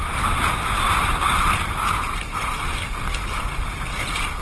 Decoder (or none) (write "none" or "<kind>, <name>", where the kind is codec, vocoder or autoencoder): none